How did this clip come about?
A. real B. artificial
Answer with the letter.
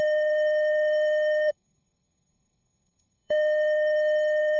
B